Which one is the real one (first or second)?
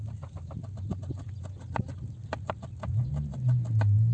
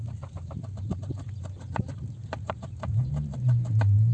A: first